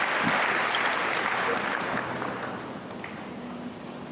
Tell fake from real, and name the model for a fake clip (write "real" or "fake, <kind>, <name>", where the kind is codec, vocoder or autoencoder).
real